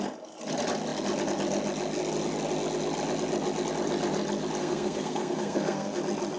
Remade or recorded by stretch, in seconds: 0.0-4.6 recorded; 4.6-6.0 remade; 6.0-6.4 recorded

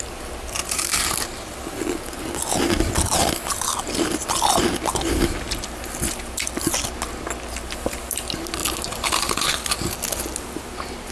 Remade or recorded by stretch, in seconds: 0.0-0.6 recorded; 0.6-1.7 remade; 1.7-3.2 recorded; 3.2-5.8 remade; 5.8-8.6 recorded; 8.6-9.2 remade; 9.2-11.1 recorded

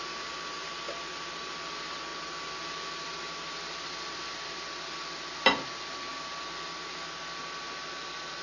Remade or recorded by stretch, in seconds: 0.0-8.4 recorded